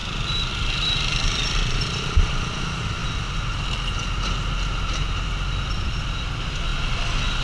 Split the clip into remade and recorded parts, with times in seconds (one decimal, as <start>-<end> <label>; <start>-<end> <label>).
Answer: 0.0-2.3 remade; 2.3-7.4 recorded